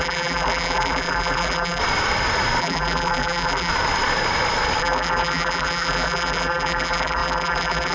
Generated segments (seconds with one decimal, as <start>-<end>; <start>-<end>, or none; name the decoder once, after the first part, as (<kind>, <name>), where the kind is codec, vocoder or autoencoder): 0.0-1.8 (vocoder, BigVGAN v2); 2.6-3.7; 4.8-7.9